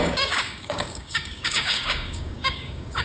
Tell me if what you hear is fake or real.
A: fake